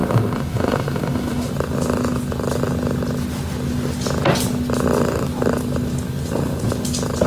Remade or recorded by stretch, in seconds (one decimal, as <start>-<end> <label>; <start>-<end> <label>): 0.0-1.5 remade; 1.5-7.3 recorded